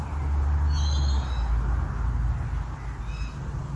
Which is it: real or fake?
real